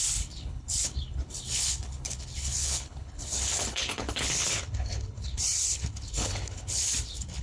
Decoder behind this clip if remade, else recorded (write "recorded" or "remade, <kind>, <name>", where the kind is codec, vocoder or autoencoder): remade, codec, HILCodec